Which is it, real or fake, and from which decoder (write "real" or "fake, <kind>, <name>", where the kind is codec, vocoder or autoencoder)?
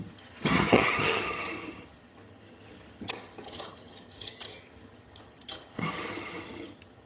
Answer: fake, vocoder, HiFi-GAN